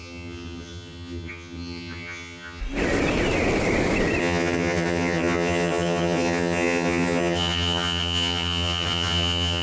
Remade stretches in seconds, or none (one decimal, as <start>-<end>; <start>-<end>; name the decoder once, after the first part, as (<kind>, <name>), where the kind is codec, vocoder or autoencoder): 0.0-2.6 (vocoder, HiFi-GAN); 4.2-9.6